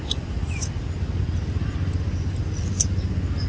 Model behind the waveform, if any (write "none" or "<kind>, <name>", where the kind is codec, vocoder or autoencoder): none